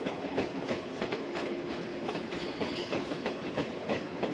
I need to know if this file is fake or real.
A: fake